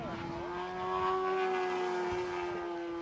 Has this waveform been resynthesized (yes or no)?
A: no